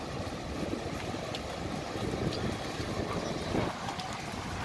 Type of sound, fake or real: real